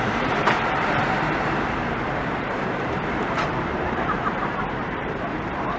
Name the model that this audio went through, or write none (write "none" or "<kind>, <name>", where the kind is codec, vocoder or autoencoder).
vocoder, BigVGAN v2